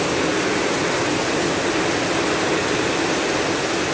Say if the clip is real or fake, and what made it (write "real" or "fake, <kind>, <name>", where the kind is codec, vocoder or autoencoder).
real